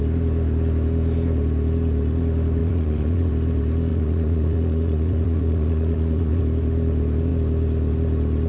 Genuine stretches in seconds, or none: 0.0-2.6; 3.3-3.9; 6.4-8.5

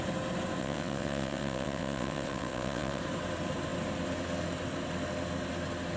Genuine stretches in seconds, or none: 0.0-0.6; 3.0-6.0